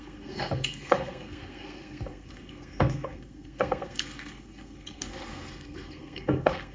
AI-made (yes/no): yes